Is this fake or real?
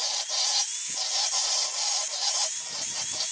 real